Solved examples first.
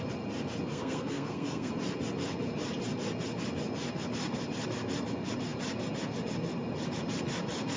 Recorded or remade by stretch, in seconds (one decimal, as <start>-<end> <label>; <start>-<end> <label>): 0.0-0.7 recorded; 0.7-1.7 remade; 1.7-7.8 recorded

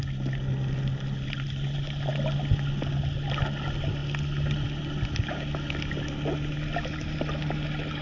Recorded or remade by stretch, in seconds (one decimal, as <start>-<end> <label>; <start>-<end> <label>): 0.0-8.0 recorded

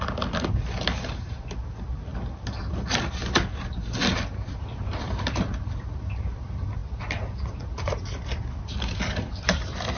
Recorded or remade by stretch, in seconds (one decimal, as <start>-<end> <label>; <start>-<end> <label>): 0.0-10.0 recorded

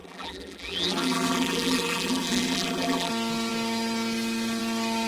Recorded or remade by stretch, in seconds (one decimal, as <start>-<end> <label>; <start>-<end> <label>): 0.0-3.1 remade; 3.1-5.1 recorded

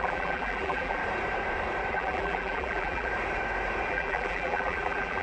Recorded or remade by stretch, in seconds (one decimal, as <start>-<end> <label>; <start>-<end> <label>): 0.0-1.0 remade; 1.0-1.9 recorded; 1.9-3.1 remade; 3.1-3.9 recorded; 3.9-5.2 remade

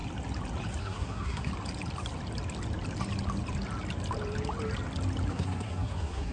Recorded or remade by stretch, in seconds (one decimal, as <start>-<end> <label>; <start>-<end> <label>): 0.0-0.8 recorded; 0.8-1.5 remade; 1.5-5.3 recorded; 5.3-6.3 remade

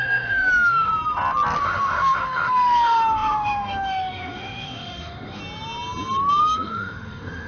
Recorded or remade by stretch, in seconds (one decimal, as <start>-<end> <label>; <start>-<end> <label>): 0.0-0.9 remade; 0.9-1.6 recorded; 1.6-5.4 remade; 5.4-6.4 recorded; 6.4-7.5 remade